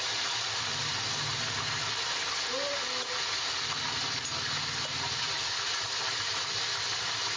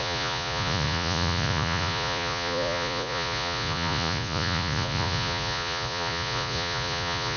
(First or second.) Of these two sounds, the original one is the first